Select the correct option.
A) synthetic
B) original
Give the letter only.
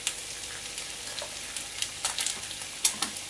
B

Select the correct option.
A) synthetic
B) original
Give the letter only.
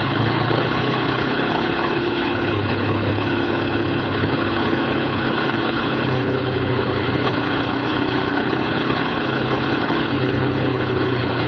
A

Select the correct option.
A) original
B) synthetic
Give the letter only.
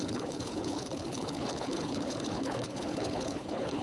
B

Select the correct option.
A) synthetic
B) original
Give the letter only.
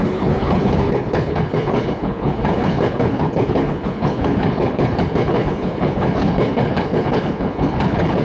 A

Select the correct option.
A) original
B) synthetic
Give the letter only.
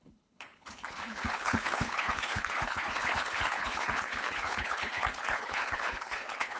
B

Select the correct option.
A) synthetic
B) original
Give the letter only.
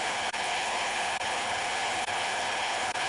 A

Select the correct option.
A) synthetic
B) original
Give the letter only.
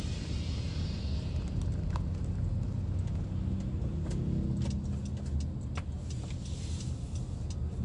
B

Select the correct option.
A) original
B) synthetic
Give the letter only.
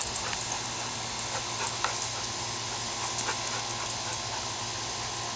A